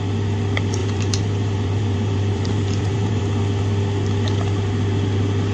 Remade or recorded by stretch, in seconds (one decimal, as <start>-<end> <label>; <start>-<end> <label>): 0.0-0.8 recorded; 0.8-3.2 remade; 3.2-5.5 recorded